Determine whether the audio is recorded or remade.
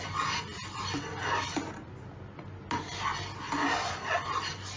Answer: recorded